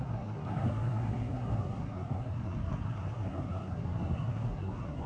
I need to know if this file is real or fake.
fake